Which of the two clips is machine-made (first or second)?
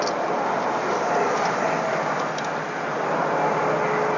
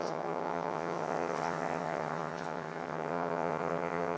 second